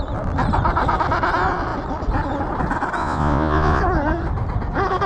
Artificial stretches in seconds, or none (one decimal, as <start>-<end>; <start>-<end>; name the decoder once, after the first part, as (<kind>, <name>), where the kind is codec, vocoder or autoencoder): 3.0-3.8 (vocoder, Vocos)